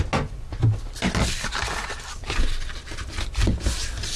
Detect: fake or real real